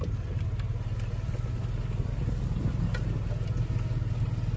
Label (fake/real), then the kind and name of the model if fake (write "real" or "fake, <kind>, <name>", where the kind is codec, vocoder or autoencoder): real